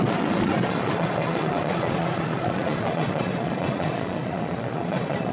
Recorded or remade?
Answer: remade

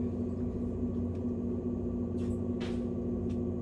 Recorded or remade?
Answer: recorded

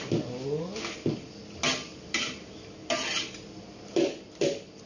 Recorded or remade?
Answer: recorded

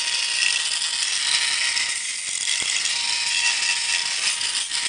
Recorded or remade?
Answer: recorded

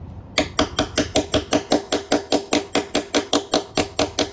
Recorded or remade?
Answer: recorded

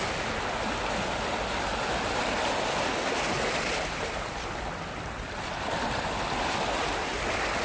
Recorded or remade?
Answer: recorded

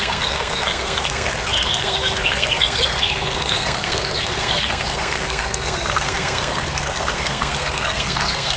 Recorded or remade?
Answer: remade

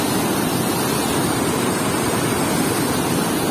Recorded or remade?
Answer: recorded